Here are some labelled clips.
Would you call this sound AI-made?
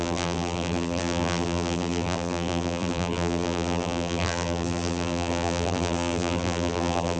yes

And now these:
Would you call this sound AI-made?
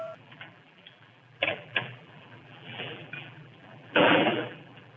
yes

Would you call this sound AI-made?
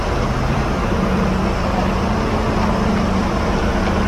no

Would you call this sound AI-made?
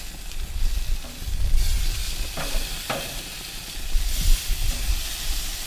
no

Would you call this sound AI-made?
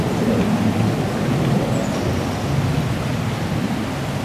no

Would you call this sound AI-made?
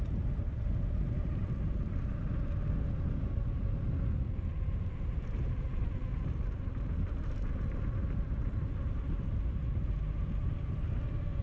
no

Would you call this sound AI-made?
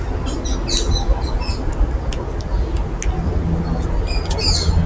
no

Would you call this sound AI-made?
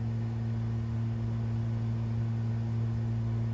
no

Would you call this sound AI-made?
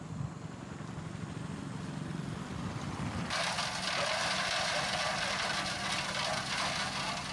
no